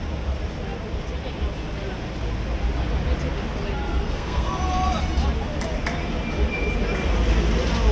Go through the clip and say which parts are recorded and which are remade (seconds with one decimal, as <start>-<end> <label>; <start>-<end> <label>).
0.0-3.8 recorded; 3.8-4.5 remade; 4.5-7.9 recorded